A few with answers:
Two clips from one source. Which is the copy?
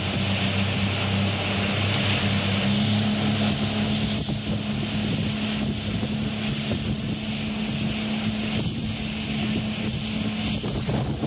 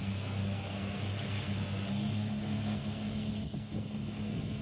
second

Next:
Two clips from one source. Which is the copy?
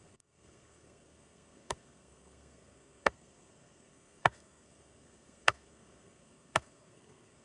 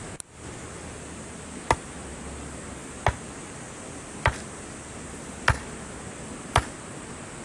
first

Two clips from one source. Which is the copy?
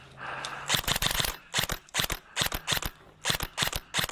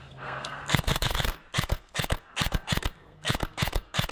second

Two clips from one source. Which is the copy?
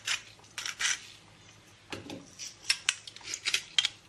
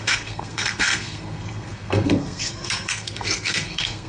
second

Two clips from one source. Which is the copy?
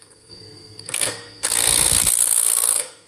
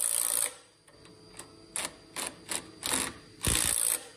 first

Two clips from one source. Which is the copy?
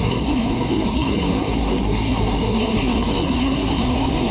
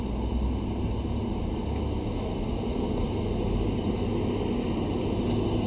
first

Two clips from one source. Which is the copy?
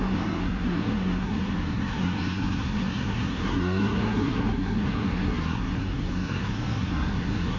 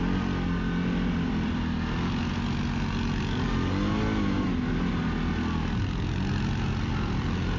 first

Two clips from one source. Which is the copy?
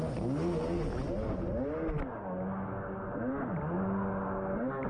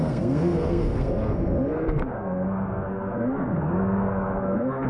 second